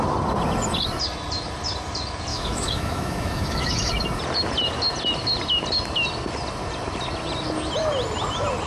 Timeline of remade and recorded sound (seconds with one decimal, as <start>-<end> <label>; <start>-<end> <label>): 0.0-2.3 recorded; 2.3-3.9 remade; 3.9-8.7 recorded